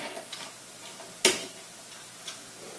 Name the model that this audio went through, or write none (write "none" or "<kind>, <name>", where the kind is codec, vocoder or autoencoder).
none